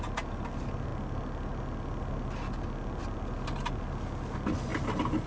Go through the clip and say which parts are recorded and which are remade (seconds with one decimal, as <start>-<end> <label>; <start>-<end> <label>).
0.0-4.7 recorded; 4.7-5.3 remade